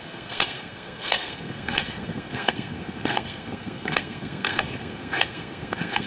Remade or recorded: remade